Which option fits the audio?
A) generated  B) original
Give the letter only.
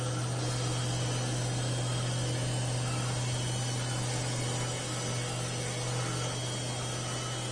B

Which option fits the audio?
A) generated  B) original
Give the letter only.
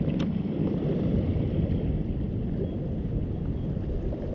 B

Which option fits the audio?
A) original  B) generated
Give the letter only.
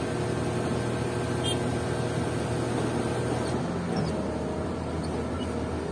A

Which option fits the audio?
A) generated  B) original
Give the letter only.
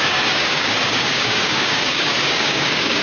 A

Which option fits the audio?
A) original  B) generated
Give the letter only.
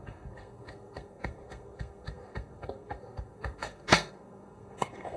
B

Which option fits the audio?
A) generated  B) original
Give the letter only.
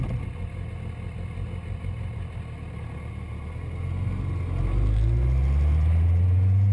B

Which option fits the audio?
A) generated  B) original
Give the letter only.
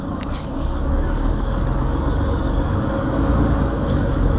A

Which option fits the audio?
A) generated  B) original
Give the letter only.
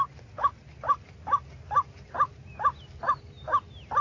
B